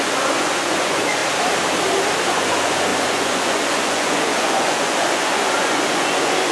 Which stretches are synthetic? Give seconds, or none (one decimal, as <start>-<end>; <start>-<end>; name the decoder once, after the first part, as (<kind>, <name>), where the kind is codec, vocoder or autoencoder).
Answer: 0.0-1.2 (vocoder, Vocos); 2.3-6.5